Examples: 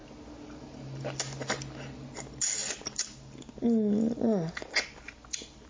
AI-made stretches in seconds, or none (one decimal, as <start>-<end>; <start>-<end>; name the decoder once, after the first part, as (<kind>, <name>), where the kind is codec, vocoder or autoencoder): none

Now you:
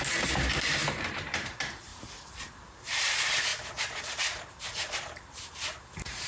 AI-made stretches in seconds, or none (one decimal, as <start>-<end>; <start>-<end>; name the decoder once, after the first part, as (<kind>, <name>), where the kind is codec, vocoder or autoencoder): 0.0-1.9 (vocoder, BigVGAN v2); 2.8-3.5; 4.0-6.3

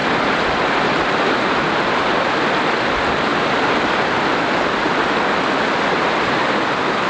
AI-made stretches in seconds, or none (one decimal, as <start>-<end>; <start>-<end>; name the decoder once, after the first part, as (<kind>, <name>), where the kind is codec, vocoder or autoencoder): none

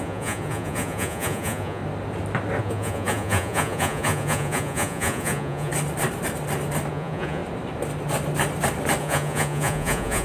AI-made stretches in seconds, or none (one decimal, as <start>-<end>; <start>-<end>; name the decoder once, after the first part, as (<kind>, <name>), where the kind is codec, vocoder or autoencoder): 0.0-1.8 (vocoder, Vocos); 2.6-5.7; 6.9-7.4; 9.0-10.2